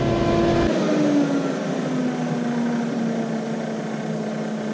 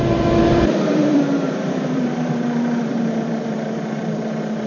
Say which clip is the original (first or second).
first